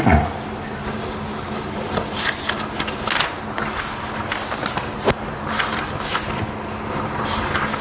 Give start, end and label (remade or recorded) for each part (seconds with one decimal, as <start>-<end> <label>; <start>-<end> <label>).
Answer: 0.0-7.8 recorded